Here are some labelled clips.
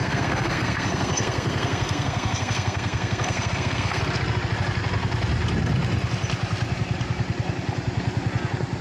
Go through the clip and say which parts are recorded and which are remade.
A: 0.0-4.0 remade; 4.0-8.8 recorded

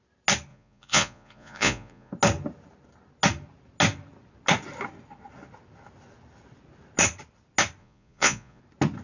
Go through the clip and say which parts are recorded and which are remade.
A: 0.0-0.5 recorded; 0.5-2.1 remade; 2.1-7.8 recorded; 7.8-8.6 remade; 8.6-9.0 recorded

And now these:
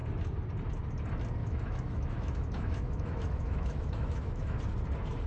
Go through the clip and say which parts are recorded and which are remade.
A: 0.0-1.4 recorded; 1.4-4.6 remade; 4.6-5.3 recorded